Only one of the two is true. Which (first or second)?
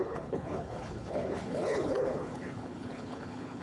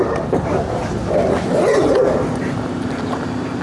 second